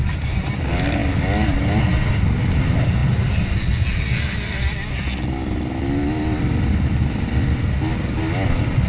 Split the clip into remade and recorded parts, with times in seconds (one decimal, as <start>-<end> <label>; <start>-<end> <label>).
0.0-8.9 recorded